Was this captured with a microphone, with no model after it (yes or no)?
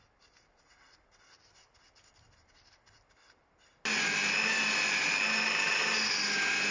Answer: yes